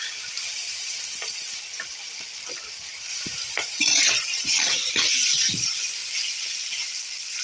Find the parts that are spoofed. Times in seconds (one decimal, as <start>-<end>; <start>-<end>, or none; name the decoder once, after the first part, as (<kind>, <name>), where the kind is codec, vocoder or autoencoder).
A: none